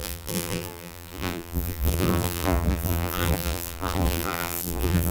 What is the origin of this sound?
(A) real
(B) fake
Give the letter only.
B